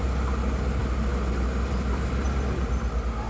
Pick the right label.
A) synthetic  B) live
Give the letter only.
B